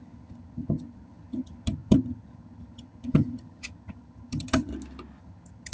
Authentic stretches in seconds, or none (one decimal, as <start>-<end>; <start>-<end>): 4.7-5.2